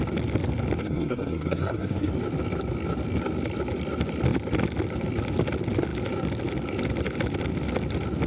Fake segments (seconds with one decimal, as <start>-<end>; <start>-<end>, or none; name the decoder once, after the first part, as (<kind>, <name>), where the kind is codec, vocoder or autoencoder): 0.8-2.1 (codec, SNAC)